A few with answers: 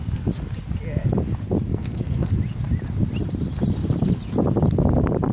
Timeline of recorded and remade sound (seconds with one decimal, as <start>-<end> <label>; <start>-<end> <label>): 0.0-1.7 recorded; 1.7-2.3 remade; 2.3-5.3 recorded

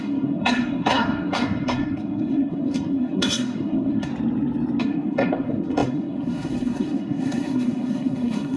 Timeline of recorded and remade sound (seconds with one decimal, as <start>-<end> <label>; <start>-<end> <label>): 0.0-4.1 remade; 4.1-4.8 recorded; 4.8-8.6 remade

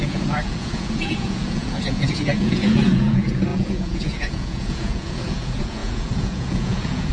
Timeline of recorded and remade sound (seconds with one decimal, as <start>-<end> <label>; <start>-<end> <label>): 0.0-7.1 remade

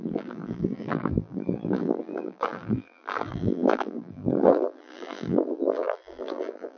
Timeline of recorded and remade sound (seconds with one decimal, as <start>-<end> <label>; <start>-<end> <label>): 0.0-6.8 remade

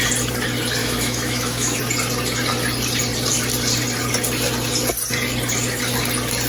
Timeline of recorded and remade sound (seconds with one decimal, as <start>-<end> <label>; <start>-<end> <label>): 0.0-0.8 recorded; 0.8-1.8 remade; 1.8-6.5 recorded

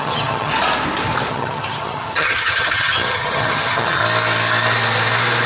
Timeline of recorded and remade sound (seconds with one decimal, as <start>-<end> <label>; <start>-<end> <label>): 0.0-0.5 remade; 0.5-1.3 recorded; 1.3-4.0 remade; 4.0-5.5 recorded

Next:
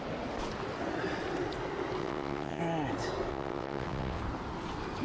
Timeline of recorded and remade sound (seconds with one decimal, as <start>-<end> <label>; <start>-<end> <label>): 0.0-2.0 recorded; 2.0-2.6 remade; 2.6-3.3 recorded; 3.3-4.2 remade; 4.2-5.0 recorded

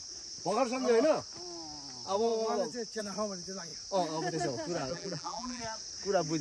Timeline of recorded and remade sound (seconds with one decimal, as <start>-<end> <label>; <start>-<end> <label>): 0.0-4.9 recorded; 4.9-5.6 remade; 5.6-6.4 recorded